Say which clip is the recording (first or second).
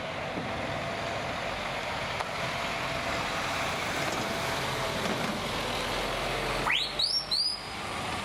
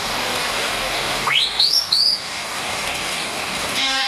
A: first